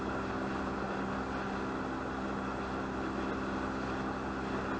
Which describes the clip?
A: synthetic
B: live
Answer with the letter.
B